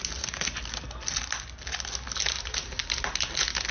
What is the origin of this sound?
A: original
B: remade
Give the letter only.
A